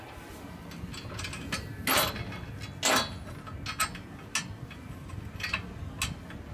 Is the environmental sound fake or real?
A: real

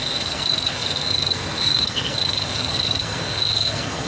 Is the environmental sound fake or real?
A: fake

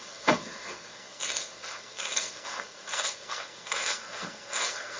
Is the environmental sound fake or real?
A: fake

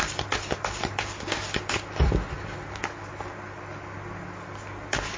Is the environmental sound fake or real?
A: real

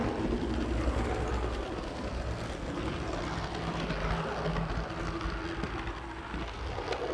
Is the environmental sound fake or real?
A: real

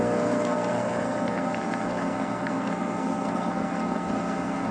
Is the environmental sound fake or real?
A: fake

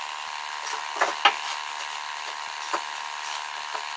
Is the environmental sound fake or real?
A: real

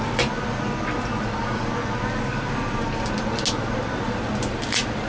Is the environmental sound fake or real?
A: real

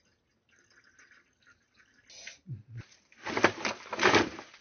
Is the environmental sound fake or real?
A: real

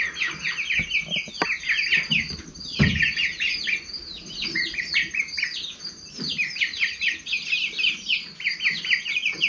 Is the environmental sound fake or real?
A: real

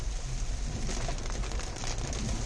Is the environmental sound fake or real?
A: real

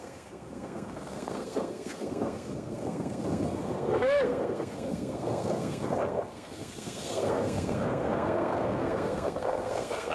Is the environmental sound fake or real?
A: fake